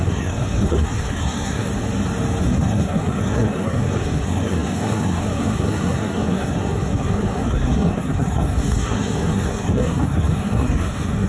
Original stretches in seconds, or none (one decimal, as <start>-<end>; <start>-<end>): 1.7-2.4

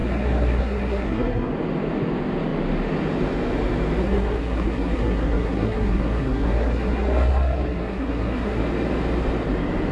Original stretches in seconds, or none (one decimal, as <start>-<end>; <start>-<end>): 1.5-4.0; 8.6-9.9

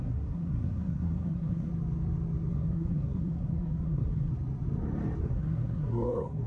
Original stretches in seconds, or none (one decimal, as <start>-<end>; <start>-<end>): 1.7-2.5; 4.3-5.2